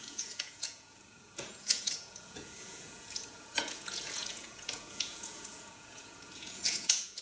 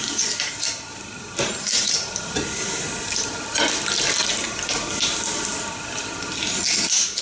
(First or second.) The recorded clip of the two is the second